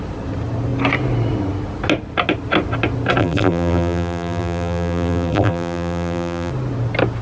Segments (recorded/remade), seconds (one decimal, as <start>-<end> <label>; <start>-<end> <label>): 0.0-3.2 recorded; 3.2-6.5 remade; 6.5-7.2 recorded